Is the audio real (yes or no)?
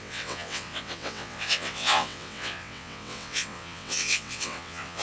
no